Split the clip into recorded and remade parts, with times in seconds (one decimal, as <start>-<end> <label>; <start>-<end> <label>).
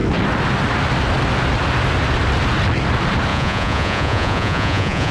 0.0-3.3 recorded; 3.3-5.1 remade